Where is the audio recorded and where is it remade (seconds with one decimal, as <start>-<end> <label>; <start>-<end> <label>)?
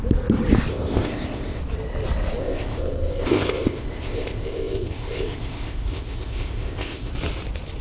0.0-0.7 recorded; 0.7-1.6 remade; 1.6-2.4 recorded; 2.4-7.1 remade; 7.1-7.8 recorded